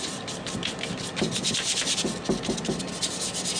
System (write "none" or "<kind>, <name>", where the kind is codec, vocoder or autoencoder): none